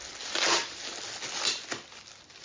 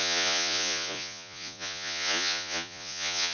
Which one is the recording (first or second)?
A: first